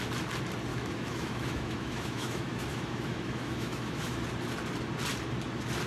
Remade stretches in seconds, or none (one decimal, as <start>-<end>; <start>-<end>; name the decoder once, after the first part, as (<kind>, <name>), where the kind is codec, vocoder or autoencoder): 0.7-4.2 (autoencoder, DAC-VAE)